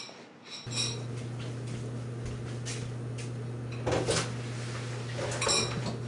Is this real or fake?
real